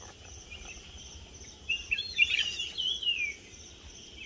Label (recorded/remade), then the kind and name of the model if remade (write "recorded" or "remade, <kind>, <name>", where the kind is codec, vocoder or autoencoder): recorded